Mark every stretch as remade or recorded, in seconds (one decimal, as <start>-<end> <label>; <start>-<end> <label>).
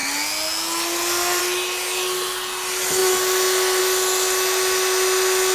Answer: 0.0-5.5 recorded